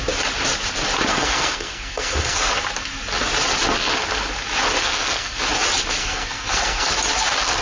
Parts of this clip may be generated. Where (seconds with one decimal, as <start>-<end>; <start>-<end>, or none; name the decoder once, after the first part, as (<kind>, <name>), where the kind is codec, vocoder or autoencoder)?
1.1-2.5 (codec, SNAC); 4.8-5.4; 6.0-6.9